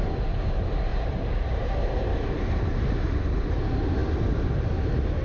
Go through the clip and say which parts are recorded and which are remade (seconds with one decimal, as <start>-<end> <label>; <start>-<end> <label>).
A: 0.0-0.9 recorded; 0.9-2.6 remade; 2.6-5.2 recorded

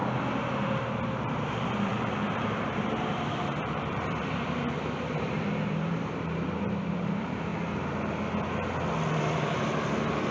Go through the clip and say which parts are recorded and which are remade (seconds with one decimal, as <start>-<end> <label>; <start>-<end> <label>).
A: 0.0-1.0 recorded; 1.0-7.5 remade; 7.5-9.1 recorded; 9.1-10.3 remade

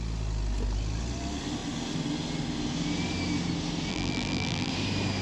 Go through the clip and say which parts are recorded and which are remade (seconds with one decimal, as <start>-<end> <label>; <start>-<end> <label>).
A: 0.0-3.9 recorded; 3.9-4.7 remade; 4.7-5.2 recorded

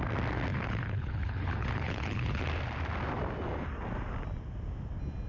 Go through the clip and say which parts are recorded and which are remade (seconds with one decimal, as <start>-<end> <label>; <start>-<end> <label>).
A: 0.0-0.5 recorded; 0.5-2.4 remade; 2.4-5.3 recorded

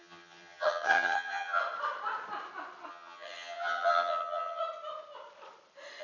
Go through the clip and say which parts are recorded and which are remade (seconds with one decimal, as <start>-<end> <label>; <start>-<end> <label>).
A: 0.0-1.6 remade; 1.6-2.9 recorded; 2.9-4.6 remade; 4.6-6.0 recorded

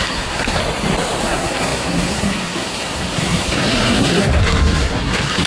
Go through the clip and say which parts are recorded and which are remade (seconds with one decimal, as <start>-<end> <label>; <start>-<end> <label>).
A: 0.0-0.6 remade; 0.6-1.2 recorded; 1.2-5.5 remade

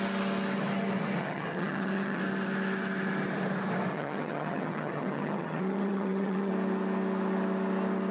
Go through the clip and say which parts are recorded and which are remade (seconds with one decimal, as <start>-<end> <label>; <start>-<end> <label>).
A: 0.0-1.2 recorded; 1.2-2.2 remade; 2.2-3.9 recorded; 3.9-6.5 remade; 6.5-8.1 recorded